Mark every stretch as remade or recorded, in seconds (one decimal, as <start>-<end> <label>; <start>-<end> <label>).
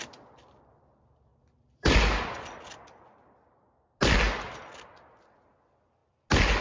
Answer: 0.0-1.3 recorded; 1.3-2.8 remade; 2.8-6.6 recorded